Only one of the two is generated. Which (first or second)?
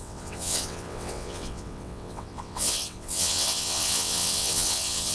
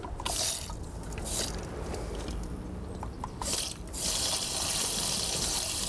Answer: first